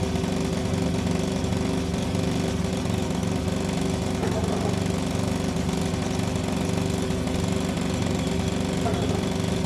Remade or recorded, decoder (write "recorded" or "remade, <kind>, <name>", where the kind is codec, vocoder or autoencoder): recorded